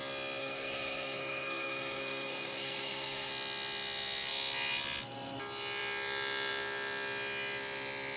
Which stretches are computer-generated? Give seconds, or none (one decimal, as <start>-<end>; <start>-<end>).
0.4-3.3